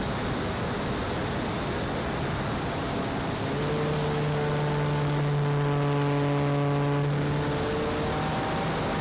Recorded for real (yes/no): yes